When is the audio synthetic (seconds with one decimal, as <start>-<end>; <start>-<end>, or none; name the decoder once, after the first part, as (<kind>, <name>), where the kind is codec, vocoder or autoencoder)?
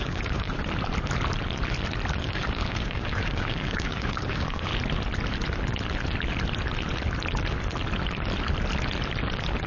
0.0-0.6 (codec, DAC); 2.2-4.7